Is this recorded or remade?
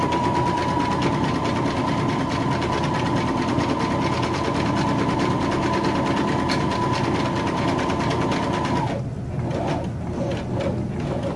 recorded